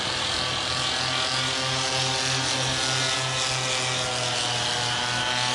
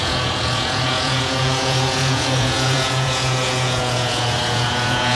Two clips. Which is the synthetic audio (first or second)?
second